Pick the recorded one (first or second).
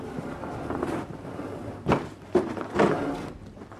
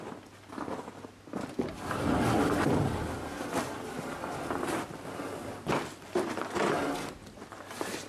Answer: second